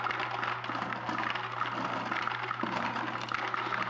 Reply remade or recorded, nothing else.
recorded